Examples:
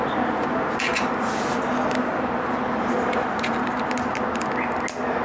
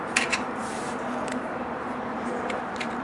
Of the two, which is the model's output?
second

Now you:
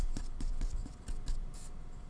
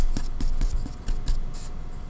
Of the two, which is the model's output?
first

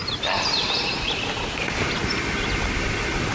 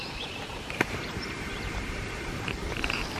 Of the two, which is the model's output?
second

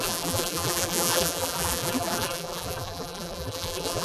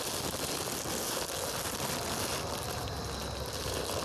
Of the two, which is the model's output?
first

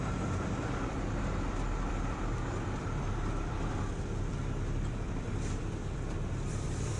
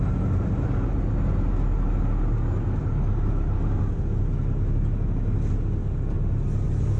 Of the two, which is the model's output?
first